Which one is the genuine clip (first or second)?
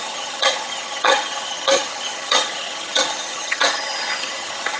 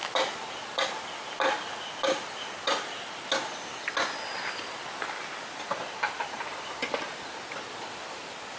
second